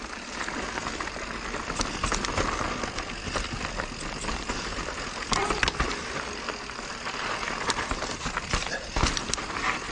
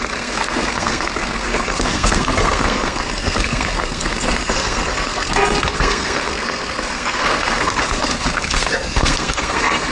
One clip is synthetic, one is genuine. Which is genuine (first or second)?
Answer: first